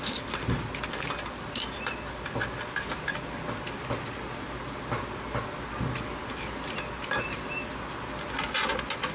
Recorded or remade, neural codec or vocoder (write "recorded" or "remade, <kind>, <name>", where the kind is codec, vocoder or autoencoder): recorded